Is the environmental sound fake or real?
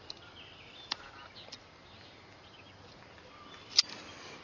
real